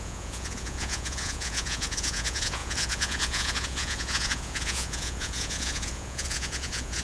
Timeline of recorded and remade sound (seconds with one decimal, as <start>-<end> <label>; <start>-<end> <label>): 0.0-7.0 remade